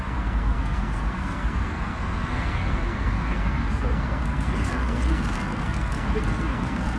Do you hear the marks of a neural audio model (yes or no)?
yes